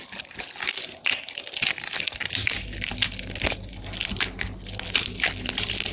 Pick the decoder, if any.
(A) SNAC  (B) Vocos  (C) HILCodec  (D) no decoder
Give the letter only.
D